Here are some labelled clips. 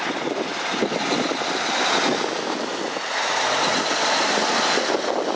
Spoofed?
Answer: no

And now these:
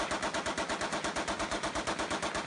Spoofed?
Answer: no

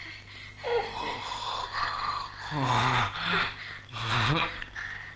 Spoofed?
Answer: no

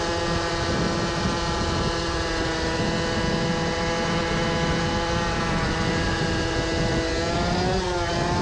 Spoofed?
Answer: no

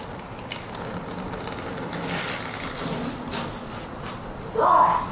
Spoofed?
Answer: no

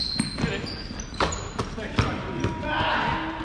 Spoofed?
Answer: no